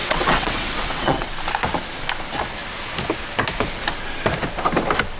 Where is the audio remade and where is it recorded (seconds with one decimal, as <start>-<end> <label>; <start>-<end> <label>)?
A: 0.0-1.3 remade; 1.3-5.2 recorded